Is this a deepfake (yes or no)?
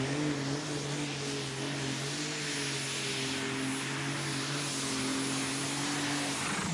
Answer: no